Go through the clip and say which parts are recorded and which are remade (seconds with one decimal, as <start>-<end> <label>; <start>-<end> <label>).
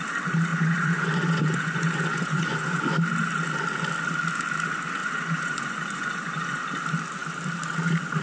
0.0-0.5 recorded; 0.5-2.8 remade; 2.8-5.0 recorded; 5.0-6.6 remade; 6.6-8.2 recorded